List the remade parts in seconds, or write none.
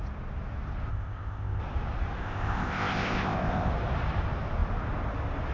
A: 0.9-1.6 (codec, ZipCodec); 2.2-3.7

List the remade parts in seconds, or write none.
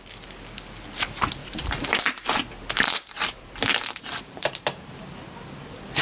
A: 1.4-5.0 (vocoder, BigVGAN v2)